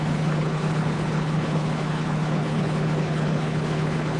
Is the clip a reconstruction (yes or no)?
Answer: yes